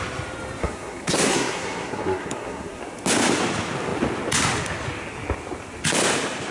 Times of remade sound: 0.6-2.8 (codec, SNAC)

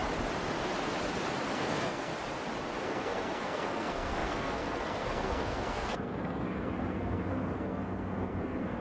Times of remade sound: 1.5-2.1 (codec, SNAC); 2.8-8.8